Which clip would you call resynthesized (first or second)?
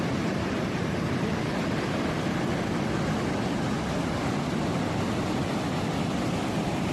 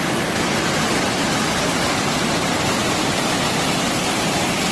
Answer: second